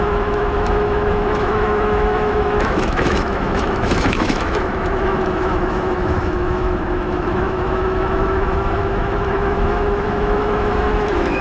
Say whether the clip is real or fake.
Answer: fake